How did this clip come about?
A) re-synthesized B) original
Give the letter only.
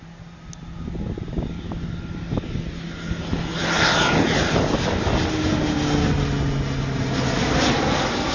B